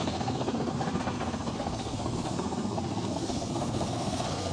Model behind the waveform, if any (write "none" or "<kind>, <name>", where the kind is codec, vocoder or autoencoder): codec, SNAC